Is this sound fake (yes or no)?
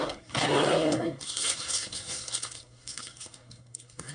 yes